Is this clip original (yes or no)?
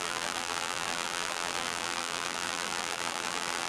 no